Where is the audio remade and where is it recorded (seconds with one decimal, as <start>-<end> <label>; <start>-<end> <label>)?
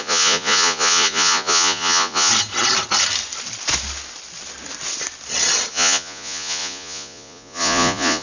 0.0-2.3 remade; 2.3-5.7 recorded; 5.7-8.2 remade